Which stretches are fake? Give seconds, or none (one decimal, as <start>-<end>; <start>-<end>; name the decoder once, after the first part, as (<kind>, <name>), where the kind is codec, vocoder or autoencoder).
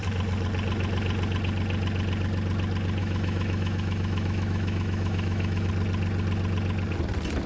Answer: 3.0-5.7 (autoencoder, DAC-VAE)